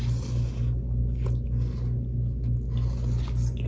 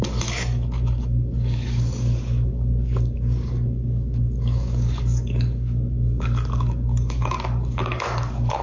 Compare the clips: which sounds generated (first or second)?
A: second